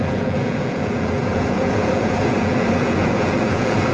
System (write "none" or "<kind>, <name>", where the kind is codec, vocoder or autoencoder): vocoder, Vocos